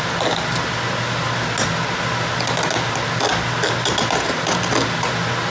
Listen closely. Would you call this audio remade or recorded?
recorded